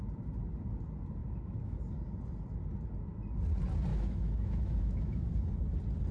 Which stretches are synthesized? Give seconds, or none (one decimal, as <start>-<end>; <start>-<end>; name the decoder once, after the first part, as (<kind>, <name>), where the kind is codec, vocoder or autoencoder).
1.2-1.8 (autoencoder, DAC-VAE); 3.9-5.3